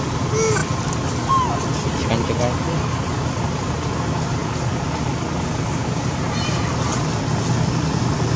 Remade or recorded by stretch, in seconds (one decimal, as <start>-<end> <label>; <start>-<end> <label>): 0.0-8.4 recorded